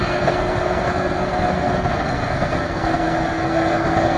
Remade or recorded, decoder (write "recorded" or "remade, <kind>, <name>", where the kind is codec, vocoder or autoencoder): remade, codec, SNAC